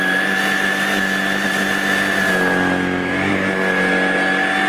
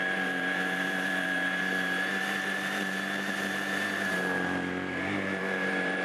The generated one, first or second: second